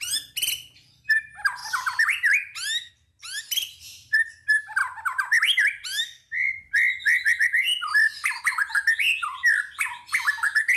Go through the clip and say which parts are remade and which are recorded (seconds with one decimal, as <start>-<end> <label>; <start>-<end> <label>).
0.0-10.8 recorded